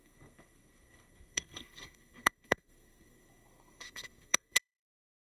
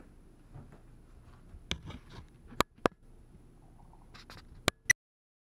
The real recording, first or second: second